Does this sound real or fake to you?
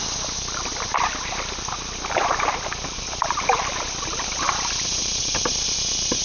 real